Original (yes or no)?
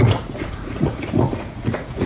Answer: no